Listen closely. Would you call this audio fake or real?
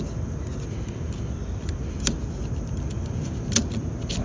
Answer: real